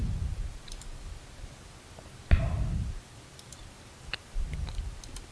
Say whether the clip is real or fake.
real